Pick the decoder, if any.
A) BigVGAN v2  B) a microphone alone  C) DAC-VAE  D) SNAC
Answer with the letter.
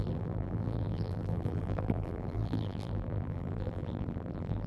A